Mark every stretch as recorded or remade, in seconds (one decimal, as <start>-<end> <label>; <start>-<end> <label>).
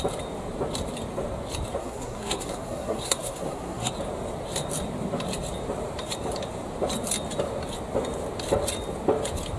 0.0-1.8 recorded; 1.8-3.9 remade; 3.9-9.6 recorded